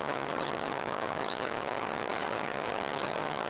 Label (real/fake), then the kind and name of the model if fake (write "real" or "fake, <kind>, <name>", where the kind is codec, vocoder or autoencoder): fake, vocoder, HiFi-GAN